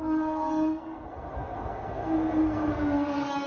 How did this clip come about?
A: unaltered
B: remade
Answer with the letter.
B